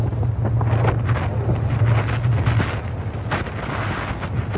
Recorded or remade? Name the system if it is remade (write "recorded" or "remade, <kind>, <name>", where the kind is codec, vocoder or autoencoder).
recorded